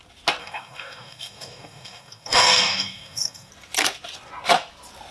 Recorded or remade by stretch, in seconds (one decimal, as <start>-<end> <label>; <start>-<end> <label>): 0.0-0.4 recorded; 0.4-3.5 remade; 3.5-5.1 recorded